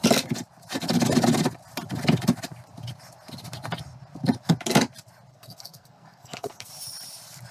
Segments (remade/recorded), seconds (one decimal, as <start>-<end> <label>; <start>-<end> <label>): 0.0-5.3 recorded; 5.3-6.7 remade; 6.7-7.5 recorded